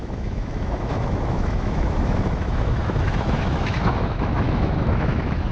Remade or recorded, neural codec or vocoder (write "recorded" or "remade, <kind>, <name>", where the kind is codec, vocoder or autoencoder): remade, autoencoder, DAC-VAE